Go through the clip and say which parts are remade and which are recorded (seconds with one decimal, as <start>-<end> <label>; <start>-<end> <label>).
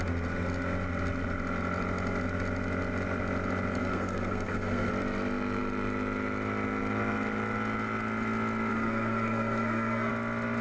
0.0-3.8 recorded; 3.8-4.9 remade; 4.9-8.7 recorded; 8.7-10.1 remade; 10.1-10.6 recorded